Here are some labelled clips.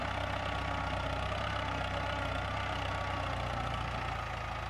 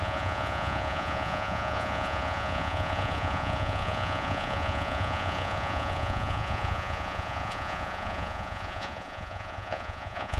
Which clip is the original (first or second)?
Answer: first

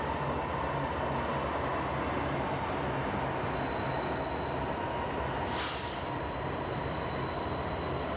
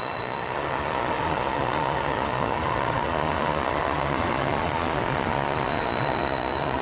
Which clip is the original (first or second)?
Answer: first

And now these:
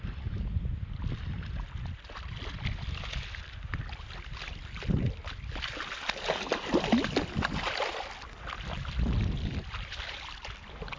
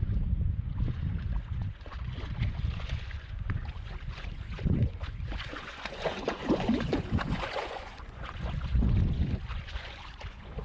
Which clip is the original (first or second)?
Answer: first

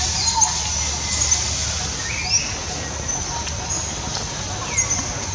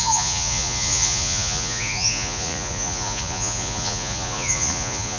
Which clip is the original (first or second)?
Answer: first